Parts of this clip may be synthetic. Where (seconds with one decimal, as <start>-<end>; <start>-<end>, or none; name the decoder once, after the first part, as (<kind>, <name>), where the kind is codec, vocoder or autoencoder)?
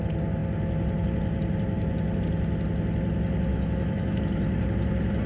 3.5-4.2 (autoencoder, DAC-VAE)